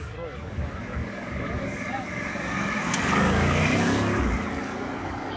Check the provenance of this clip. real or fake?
fake